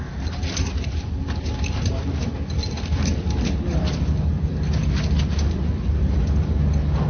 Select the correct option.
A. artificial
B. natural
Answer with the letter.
B